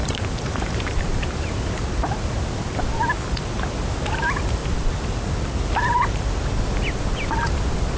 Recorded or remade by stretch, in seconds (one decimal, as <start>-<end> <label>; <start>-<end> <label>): 0.0-2.7 remade; 2.7-4.6 recorded; 4.6-6.3 remade; 6.3-8.0 recorded